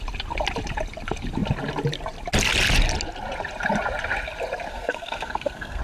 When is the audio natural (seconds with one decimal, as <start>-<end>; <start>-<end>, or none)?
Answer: 0.0-4.7

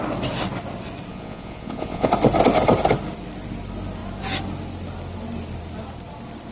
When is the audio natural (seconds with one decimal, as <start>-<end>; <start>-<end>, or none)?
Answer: 0.0-1.1; 2.1-6.5

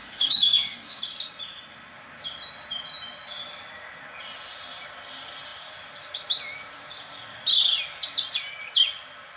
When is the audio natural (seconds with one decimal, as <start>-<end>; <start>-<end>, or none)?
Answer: 1.0-9.4

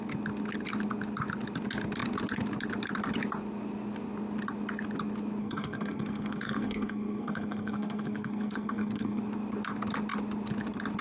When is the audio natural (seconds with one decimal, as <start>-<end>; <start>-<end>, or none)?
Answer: 0.0-5.4; 9.2-11.0

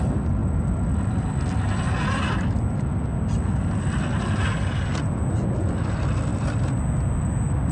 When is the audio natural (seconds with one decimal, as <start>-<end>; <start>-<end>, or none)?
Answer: 0.0-7.7

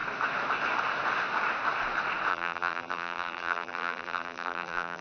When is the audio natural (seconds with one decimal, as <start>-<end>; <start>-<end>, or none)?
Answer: 0.0-2.3